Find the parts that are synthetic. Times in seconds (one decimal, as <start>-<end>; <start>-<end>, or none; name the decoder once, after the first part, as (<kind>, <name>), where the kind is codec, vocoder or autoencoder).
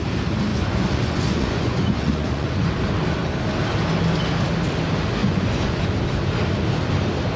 0.5-2.7 (vocoder, Vocos); 5.2-5.9